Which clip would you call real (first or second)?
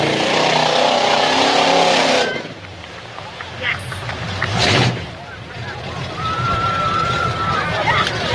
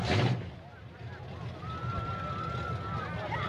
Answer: second